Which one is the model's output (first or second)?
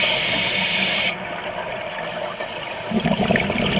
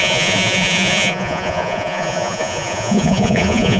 second